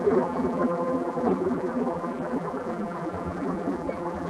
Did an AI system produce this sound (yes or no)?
yes